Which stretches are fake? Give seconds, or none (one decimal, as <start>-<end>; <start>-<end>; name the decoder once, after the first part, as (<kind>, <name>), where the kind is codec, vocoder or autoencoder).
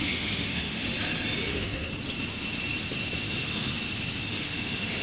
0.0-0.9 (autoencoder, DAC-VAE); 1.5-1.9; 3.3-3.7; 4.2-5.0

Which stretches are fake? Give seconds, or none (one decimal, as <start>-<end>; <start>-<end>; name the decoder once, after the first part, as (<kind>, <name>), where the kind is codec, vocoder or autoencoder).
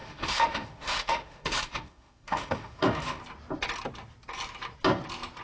0.0-3.2 (autoencoder, DAC-VAE)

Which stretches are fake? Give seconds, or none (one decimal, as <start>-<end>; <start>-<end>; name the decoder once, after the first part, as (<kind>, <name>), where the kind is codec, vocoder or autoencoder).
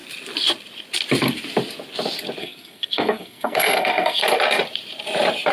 2.4-4.2 (codec, SNAC)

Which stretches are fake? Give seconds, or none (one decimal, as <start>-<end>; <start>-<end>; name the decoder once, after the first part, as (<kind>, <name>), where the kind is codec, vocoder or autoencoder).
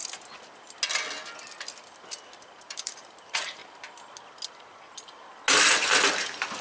2.6-3.6 (vocoder, BigVGAN v2)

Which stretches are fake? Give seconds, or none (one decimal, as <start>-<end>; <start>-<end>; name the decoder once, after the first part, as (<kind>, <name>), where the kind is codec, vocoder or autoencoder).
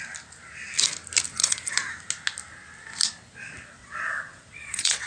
1.3-1.9 (vocoder, Vocos); 3.8-5.1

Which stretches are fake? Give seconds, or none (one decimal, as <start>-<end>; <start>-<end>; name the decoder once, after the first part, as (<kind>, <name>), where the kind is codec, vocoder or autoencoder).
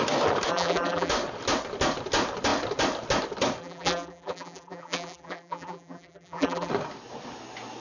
0.5-1.1 (vocoder, BigVGAN v2); 3.6-6.7